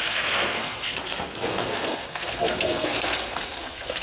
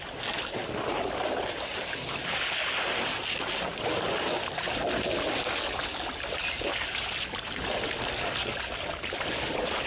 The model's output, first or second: first